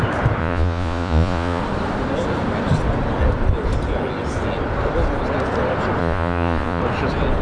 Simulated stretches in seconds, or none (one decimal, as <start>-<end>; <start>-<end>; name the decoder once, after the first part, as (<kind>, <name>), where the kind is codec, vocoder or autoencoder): 0.4-1.6 (vocoder, Vocos); 6.0-6.8